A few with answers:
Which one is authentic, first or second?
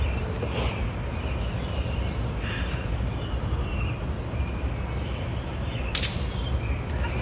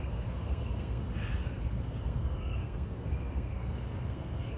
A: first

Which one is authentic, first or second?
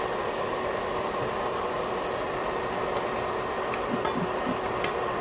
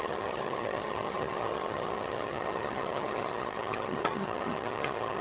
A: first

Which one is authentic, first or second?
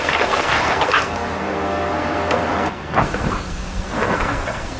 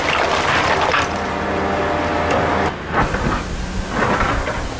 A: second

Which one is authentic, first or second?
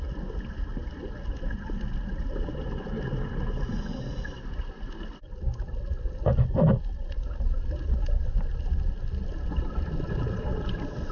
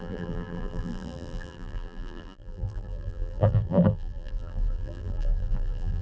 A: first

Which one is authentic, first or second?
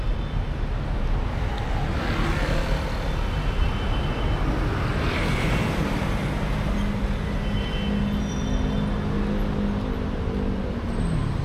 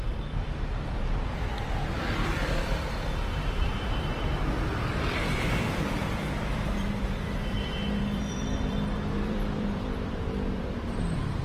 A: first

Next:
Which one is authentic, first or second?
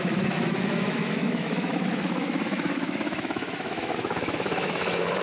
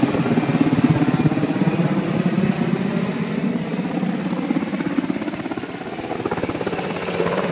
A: second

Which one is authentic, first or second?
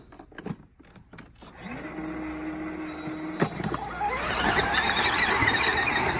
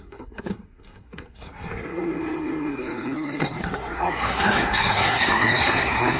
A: first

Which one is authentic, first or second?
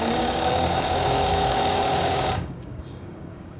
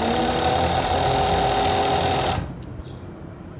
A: second